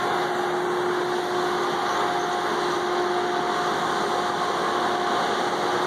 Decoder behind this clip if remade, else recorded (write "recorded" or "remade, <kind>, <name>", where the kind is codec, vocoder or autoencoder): recorded